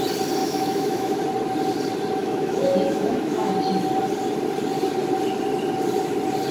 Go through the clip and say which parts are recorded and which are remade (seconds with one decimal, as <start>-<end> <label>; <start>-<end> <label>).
0.0-0.4 recorded; 0.4-1.2 remade; 1.2-2.2 recorded; 2.2-3.5 remade; 3.5-6.5 recorded